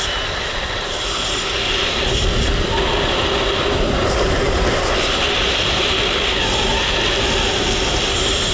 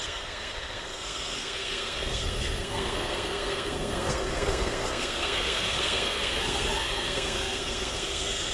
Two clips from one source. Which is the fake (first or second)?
second